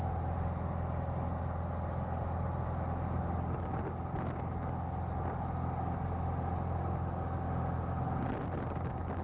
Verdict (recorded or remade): recorded